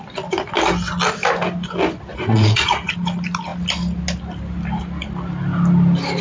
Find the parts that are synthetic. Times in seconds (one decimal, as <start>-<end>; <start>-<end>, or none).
2.1-2.9